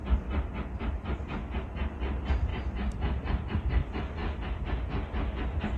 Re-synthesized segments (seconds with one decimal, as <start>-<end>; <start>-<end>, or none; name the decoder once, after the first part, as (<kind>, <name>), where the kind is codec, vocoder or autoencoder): 0.5-1.2 (vocoder, BigVGAN v2); 2.5-3.7